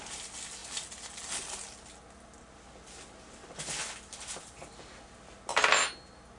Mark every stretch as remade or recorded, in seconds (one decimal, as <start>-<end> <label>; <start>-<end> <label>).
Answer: 0.0-6.4 recorded